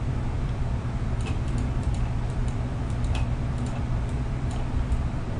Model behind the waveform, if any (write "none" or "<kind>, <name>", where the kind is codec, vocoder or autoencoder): vocoder, BigVGAN v2